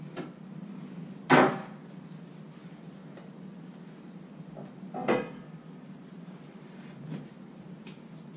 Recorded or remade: recorded